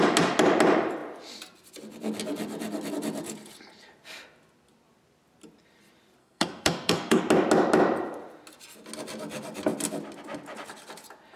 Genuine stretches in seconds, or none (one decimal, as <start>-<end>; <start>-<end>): 0.0-6.2; 7.2-11.4